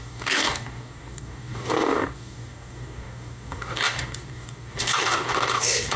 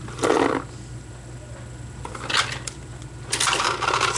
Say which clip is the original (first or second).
second